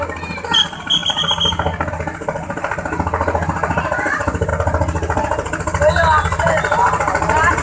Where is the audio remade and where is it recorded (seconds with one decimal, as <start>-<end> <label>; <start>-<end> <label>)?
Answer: 0.0-1.0 remade; 1.0-1.9 recorded; 1.9-4.5 remade; 4.5-6.5 recorded; 6.5-7.6 remade